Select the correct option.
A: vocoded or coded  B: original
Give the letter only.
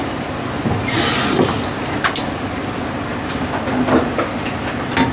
B